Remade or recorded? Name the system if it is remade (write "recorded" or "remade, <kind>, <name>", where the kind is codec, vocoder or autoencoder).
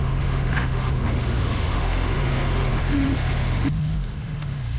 remade, autoencoder, DAC-VAE